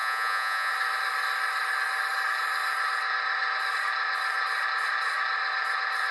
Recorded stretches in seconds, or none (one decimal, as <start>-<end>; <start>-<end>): 0.7-6.1